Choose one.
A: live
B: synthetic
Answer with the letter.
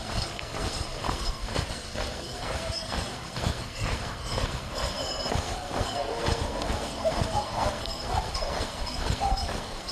B